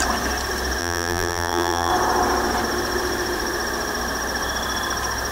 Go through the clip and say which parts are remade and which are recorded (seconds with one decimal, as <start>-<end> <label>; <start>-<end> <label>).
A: 0.0-0.8 recorded; 0.8-1.9 remade; 1.9-5.3 recorded